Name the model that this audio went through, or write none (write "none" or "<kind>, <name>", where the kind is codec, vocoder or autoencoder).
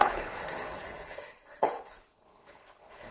codec, HILCodec